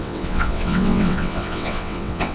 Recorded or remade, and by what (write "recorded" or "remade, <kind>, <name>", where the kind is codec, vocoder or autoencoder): remade, vocoder, WaveNeXt